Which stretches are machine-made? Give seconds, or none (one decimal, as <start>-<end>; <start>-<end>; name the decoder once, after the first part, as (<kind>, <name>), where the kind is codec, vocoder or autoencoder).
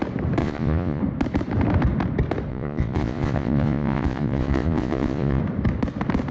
0.4-1.0 (vocoder, Vocos); 2.5-5.4